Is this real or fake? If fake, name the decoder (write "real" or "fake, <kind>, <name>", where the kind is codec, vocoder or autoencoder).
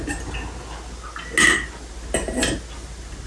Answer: real